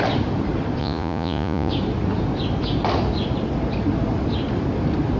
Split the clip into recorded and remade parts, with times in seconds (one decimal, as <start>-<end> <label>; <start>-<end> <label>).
0.0-0.8 recorded; 0.8-1.7 remade; 1.7-5.2 recorded